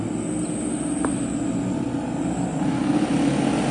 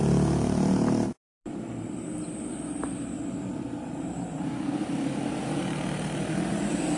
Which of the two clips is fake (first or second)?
second